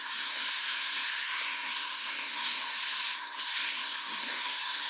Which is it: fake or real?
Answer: fake